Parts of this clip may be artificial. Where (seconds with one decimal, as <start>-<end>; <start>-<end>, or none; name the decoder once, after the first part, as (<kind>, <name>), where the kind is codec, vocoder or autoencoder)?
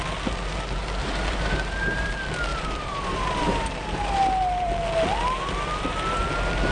1.0-2.1 (vocoder, BigVGAN v2); 2.5-4.7